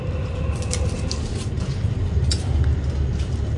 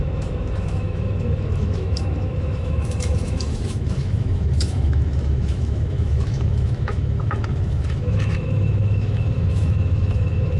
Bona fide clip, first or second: first